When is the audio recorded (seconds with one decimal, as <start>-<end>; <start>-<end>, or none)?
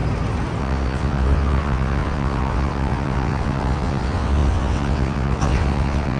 0.0-0.6